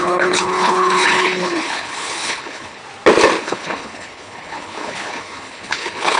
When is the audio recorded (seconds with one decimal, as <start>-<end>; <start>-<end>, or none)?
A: 2.8-3.4